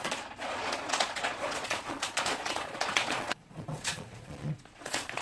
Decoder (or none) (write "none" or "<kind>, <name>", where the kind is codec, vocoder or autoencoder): vocoder, Vocos